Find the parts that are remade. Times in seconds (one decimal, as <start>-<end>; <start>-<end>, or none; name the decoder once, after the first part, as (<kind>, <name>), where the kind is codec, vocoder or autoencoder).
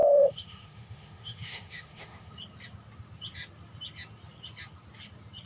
0.0-2.3 (autoencoder, DAC-VAE)